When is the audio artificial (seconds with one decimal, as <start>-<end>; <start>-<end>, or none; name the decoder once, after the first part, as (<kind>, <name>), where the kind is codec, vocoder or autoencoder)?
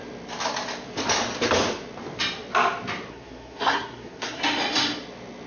3.1-4.4 (codec, SNAC)